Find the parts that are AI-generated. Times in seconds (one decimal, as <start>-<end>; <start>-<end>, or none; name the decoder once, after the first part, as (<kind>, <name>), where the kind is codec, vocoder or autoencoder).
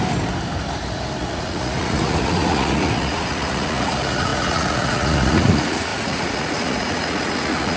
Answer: 1.2-7.8 (vocoder, Vocos)